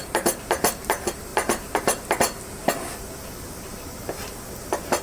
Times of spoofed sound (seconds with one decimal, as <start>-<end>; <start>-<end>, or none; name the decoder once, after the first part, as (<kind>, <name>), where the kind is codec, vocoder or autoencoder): none